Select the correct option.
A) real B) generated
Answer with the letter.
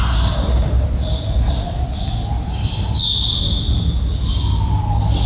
A